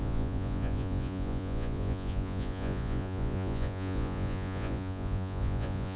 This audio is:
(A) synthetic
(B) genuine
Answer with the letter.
A